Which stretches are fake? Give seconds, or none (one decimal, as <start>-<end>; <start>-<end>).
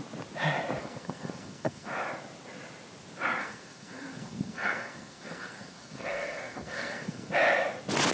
0.8-1.9; 3.4-7.3